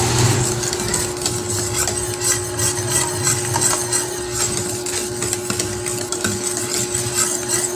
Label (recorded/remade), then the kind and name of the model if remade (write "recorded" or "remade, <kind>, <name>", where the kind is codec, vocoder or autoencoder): recorded